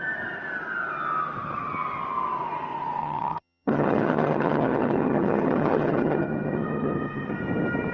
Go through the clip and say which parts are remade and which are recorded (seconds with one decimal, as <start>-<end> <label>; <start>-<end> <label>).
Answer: 0.0-3.0 recorded; 3.0-7.4 remade; 7.4-7.9 recorded